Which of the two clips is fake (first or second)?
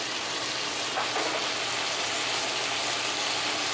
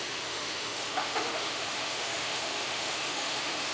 second